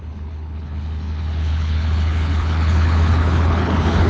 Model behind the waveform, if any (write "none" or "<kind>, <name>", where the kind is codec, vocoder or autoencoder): codec, HILCodec